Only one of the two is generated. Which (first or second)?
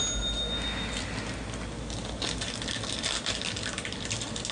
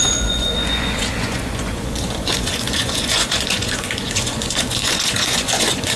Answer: second